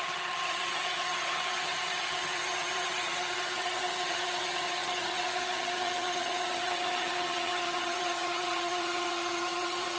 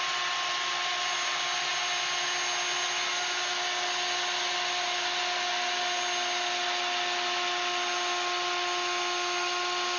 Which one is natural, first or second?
second